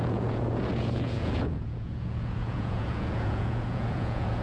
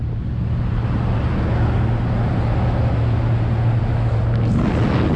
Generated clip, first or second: first